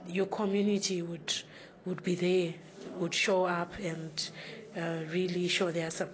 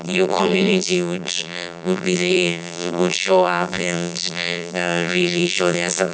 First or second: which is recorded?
first